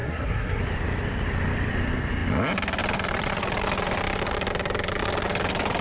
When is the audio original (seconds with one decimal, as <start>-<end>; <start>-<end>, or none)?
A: 0.6-5.8